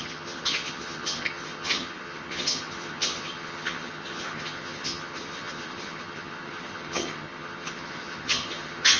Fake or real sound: fake